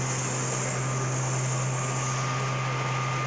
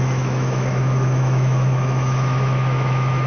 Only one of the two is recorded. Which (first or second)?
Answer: first